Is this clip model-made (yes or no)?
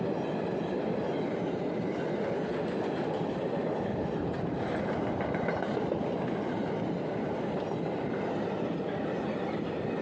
no